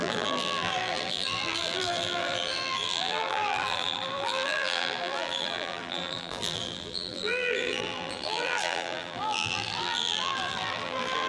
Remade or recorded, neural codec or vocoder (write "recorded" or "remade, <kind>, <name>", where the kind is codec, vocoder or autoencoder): remade, vocoder, BigVGAN v2